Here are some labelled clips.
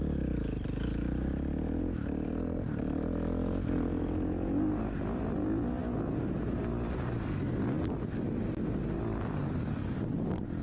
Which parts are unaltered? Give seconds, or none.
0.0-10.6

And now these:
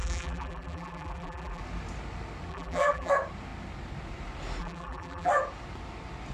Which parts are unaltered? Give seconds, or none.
1.6-2.5; 3.1-4.6; 5.3-6.3

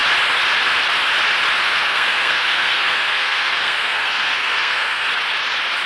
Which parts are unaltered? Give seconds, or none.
0.0-1.6; 5.1-5.9

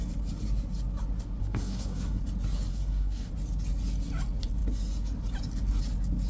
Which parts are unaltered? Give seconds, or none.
0.0-1.4; 2.2-2.7; 3.3-6.3

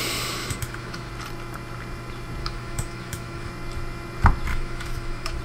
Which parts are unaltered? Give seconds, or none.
0.0-0.4; 1.1-2.4; 3.5-4.5